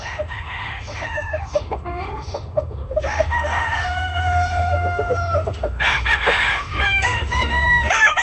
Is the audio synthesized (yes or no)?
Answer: yes